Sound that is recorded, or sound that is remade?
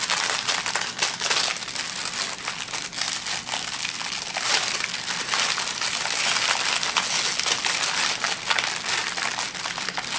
recorded